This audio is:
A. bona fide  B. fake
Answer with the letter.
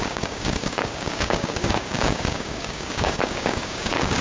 B